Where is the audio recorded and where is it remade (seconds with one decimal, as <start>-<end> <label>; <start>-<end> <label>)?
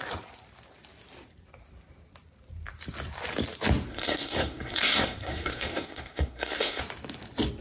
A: 0.0-3.9 recorded; 3.9-6.8 remade; 6.8-7.6 recorded